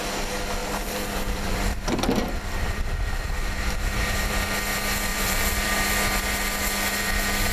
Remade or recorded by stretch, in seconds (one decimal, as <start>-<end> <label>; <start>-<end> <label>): 0.0-0.6 recorded; 0.6-4.3 remade; 4.3-5.1 recorded; 5.1-5.7 remade; 5.7-7.5 recorded